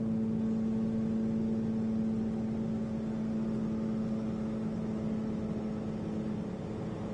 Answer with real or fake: real